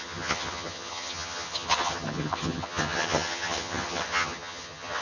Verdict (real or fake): fake